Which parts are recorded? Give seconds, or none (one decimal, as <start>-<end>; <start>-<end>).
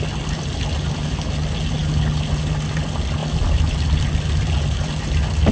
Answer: 0.0-5.5